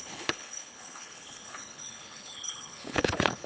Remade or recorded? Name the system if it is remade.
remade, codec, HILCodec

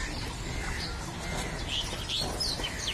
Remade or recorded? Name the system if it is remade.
recorded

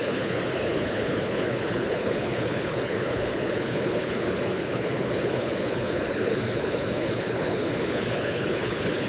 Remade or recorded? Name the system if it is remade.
remade, codec, HILCodec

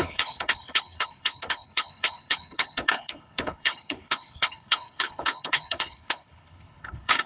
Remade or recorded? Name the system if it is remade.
remade, codec, HILCodec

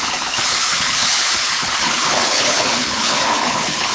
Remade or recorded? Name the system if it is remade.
remade, codec, HILCodec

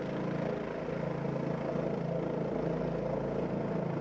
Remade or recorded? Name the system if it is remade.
recorded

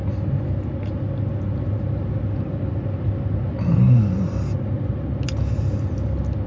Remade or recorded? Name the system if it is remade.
recorded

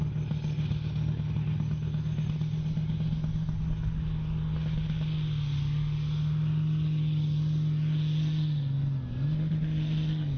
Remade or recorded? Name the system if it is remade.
recorded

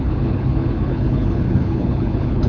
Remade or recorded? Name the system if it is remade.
remade, codec, HILCodec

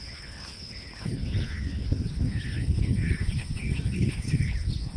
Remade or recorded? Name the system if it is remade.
remade, codec, HILCodec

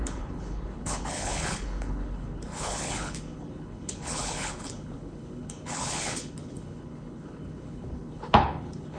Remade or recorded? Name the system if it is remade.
remade, codec, HILCodec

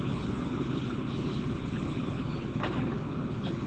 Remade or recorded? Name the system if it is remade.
remade, codec, HILCodec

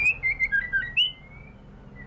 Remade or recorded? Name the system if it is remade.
recorded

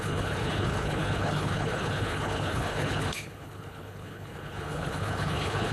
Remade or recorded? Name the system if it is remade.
remade, codec, HILCodec